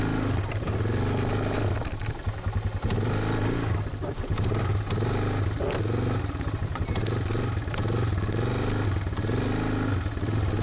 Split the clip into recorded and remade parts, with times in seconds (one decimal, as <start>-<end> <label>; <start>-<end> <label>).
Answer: 0.0-10.6 recorded